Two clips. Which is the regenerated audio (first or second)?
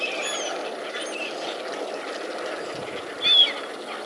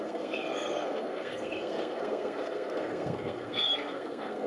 second